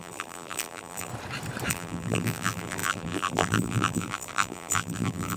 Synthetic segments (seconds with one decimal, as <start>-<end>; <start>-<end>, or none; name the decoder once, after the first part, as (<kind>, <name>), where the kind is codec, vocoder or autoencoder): 0.0-1.1 (vocoder, BigVGAN v2); 1.7-5.4